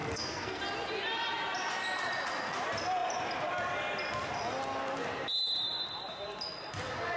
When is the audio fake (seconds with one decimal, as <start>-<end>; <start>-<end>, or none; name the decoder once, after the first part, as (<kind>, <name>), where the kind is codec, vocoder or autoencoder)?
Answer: 0.0-0.6 (codec, SNAC)